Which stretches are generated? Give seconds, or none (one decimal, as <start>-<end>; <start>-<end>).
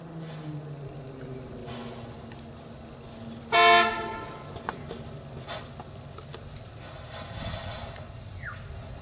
none